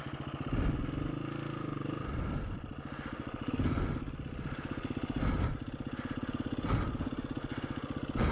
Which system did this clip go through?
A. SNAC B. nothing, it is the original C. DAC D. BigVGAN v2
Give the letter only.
B